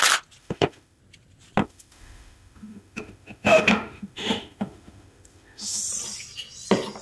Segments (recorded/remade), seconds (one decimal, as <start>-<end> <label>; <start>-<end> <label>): 0.0-0.4 recorded; 0.4-1.0 remade; 1.0-1.6 recorded; 1.6-5.8 remade; 5.8-7.0 recorded